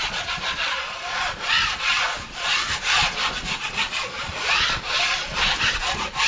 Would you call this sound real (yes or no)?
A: no